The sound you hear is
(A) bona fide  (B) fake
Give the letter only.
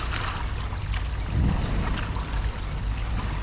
A